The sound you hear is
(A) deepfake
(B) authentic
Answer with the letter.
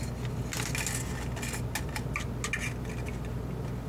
B